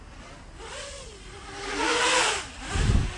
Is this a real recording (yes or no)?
yes